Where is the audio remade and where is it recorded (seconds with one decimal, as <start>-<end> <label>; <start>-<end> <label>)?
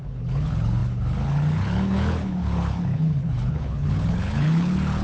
0.0-5.0 remade